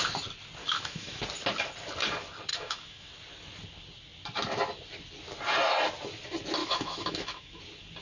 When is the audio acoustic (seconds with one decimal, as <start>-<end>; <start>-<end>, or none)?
0.0-0.6; 1.2-2.5; 3.1-6.6; 7.6-8.0